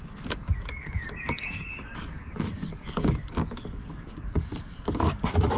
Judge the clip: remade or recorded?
remade